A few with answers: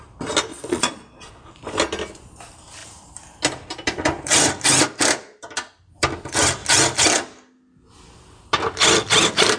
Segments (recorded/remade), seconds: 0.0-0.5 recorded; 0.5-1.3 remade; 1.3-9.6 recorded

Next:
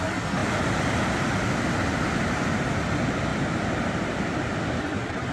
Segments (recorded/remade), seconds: 0.0-5.3 recorded

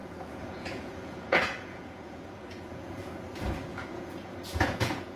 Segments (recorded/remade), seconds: 0.0-3.1 remade; 3.1-3.7 recorded; 3.7-5.2 remade

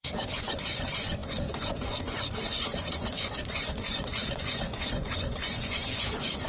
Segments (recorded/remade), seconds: 0.0-6.5 remade

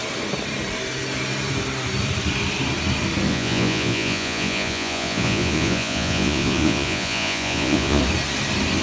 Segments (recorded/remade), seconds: 0.0-3.3 recorded; 3.3-8.0 remade; 8.0-8.8 recorded

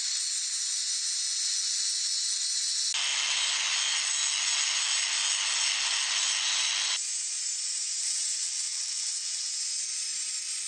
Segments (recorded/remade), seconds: 0.0-8.0 recorded; 8.0-9.5 remade; 9.5-10.7 recorded

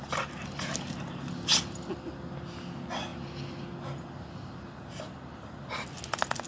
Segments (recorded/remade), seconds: 0.0-6.5 recorded